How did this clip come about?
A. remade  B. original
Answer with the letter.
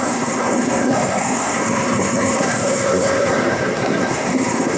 A